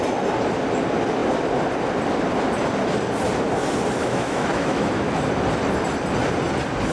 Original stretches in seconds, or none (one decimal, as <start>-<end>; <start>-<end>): 0.0-4.0; 5.2-6.9